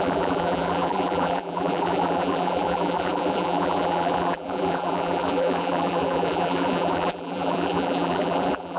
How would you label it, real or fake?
fake